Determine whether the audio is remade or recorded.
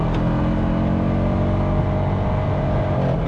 recorded